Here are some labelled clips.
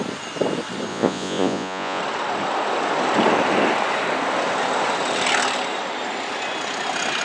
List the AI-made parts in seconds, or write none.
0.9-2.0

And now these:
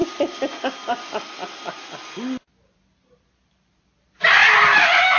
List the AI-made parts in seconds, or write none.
none

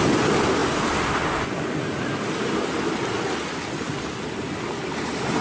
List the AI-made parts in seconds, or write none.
none

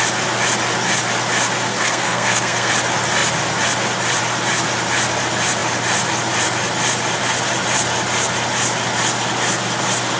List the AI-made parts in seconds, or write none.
1.7-2.7

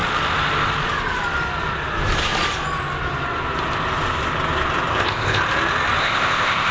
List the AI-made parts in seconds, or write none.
4.9-5.4; 6.0-6.7

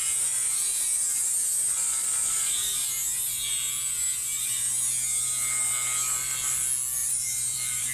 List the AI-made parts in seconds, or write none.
0.0-4.7; 7.0-7.9

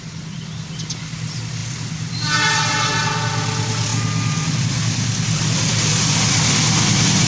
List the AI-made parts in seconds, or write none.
none

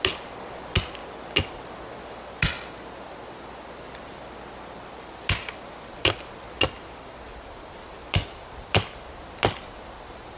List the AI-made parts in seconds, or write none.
none